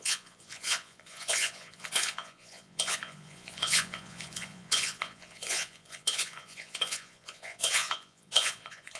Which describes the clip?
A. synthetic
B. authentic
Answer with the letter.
A